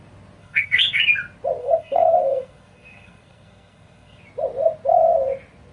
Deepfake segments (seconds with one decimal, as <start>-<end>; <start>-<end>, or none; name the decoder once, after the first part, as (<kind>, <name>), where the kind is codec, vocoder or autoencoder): 0.4-1.0 (codec, SNAC); 1.6-4.2

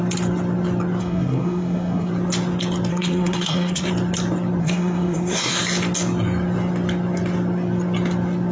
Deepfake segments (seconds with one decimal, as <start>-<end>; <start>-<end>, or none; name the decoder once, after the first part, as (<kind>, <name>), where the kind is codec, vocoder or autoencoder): 1.0-2.1 (codec, SNAC); 2.9-3.9; 4.6-5.6

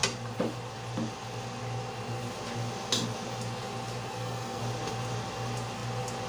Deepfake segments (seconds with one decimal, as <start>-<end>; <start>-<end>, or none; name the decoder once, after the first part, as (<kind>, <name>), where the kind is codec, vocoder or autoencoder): 4.1-4.6 (codec, SNAC)

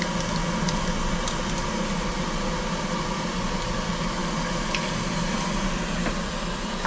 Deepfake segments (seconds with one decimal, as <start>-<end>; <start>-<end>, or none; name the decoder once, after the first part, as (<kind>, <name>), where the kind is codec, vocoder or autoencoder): none

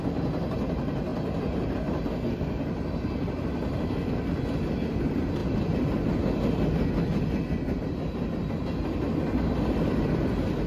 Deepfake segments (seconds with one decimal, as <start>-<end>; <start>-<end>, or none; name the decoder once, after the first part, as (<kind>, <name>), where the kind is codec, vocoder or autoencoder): 2.1-2.6 (codec, SNAC)